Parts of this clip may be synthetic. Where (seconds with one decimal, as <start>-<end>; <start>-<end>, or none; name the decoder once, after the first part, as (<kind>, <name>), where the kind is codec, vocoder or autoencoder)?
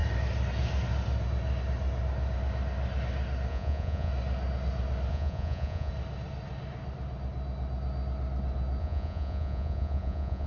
3.5-4.1 (vocoder, Vocos); 5.1-5.9; 8.8-10.5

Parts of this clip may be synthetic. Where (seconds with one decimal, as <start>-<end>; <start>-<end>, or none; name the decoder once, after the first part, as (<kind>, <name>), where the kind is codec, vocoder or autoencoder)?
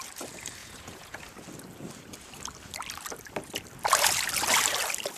0.6-1.2 (vocoder, Vocos)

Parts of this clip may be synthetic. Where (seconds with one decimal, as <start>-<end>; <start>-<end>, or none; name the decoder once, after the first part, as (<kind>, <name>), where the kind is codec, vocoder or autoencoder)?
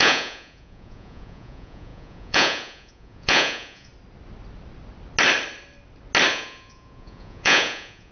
0.0-3.9 (vocoder, Vocos); 6.3-8.1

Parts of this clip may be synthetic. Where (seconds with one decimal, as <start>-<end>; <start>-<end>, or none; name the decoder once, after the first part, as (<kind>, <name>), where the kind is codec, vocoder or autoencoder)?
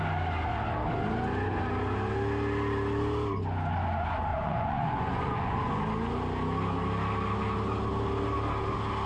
4.3-5.7 (vocoder, Vocos)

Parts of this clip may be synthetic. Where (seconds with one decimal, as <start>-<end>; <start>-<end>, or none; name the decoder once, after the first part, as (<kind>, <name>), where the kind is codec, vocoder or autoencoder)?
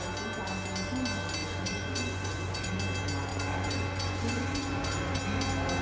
1.4-2.7 (vocoder, Vocos); 3.3-5.2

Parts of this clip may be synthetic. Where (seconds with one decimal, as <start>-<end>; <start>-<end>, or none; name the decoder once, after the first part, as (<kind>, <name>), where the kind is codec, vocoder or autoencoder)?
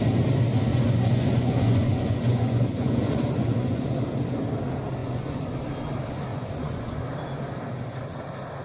0.7-4.0 (vocoder, Vocos); 5.0-5.5; 6.3-7.0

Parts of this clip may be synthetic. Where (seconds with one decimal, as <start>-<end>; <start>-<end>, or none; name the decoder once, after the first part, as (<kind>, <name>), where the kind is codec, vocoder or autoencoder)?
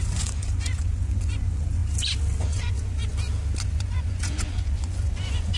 0.0-1.8 (vocoder, Vocos); 2.4-3.0; 3.6-5.6